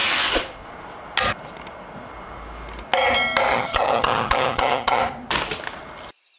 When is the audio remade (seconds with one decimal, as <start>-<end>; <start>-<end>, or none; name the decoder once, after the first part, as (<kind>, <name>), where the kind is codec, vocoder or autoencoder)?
3.5-5.0 (vocoder, HiFi-GAN)